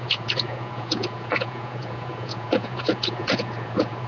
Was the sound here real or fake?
fake